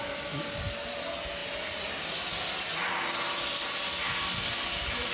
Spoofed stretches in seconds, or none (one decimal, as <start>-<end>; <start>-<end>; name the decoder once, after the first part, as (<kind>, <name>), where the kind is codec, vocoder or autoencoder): none